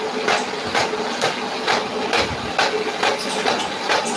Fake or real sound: real